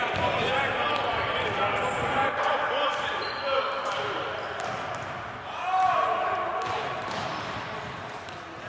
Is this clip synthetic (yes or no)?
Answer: no